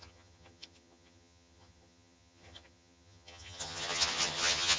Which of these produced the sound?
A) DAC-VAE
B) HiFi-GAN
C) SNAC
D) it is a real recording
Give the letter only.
B